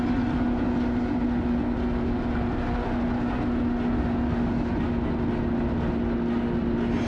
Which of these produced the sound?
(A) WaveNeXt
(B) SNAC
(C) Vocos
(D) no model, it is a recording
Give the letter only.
D